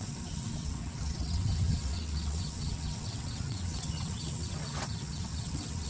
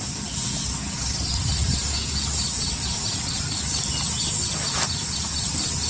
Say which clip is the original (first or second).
second